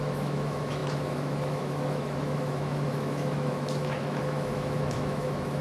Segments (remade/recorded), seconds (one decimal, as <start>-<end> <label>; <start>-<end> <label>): 0.0-5.6 remade